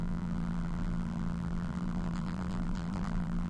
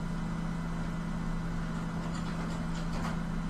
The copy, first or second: first